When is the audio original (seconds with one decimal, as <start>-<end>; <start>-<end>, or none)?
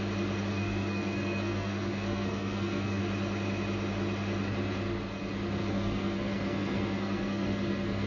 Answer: 0.0-0.5; 3.0-5.6